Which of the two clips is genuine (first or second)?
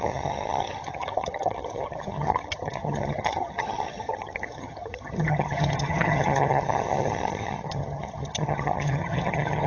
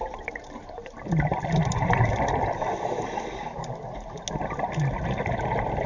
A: second